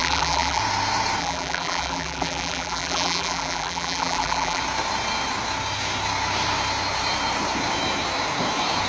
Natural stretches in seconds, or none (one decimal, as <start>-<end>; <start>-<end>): 0.6-1.2; 4.6-8.9